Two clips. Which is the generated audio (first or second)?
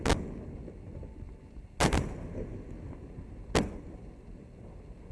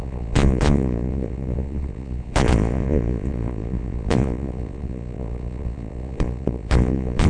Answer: second